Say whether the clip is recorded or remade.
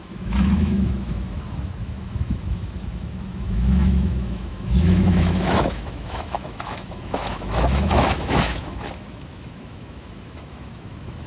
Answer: remade